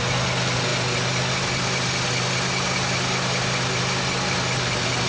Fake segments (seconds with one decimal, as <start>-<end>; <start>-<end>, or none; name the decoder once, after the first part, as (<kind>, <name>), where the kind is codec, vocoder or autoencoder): none